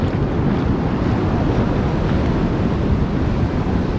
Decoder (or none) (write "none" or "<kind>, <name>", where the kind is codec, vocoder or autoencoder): none